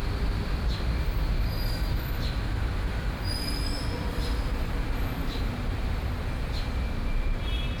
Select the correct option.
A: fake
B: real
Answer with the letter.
A